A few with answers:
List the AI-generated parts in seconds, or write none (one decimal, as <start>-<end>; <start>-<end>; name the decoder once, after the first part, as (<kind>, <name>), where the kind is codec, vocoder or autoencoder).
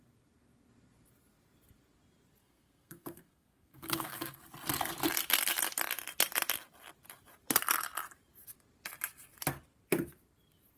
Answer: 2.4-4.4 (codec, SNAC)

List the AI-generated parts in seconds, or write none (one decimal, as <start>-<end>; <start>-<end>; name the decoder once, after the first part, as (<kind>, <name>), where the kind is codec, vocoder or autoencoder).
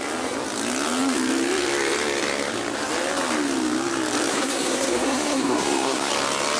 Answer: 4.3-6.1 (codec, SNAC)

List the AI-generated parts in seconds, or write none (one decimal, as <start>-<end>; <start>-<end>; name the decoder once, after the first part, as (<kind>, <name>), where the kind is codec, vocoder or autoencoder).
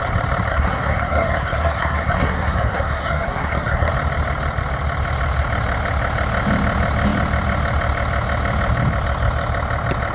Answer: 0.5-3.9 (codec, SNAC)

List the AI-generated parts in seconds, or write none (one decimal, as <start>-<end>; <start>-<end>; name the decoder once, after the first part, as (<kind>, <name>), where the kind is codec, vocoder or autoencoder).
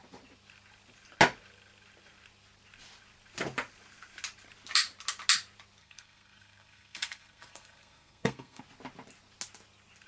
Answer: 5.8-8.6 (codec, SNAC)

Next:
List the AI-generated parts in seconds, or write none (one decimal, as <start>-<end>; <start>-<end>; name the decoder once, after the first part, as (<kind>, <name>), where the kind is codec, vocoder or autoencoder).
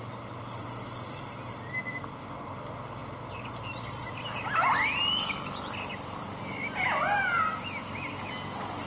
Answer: none